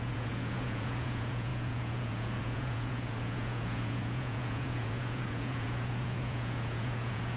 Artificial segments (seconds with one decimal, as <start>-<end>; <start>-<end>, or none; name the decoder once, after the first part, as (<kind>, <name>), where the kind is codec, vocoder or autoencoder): 0.0-7.4 (vocoder, Vocos)